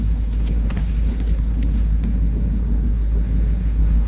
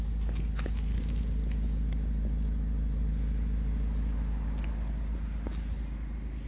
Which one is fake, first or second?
first